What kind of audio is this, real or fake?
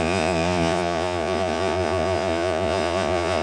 fake